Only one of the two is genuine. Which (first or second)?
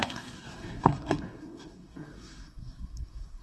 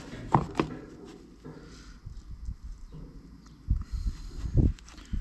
second